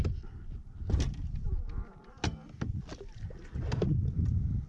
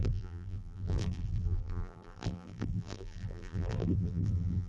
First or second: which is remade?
second